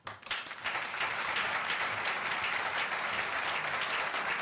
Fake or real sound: real